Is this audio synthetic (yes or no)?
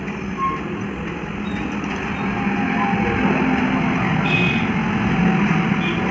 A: no